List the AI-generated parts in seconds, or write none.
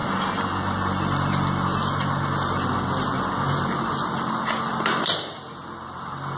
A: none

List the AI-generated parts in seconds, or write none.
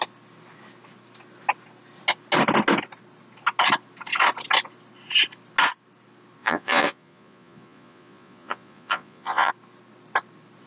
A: 6.4-9.5 (vocoder, Vocos)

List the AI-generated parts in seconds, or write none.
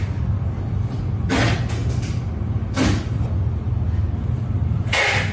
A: none